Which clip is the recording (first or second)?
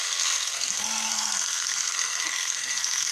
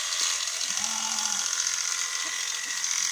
second